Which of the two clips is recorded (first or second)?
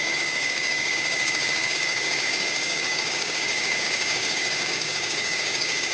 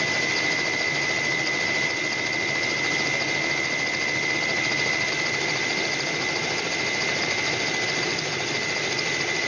second